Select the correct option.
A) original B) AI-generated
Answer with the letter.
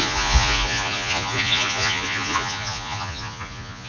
B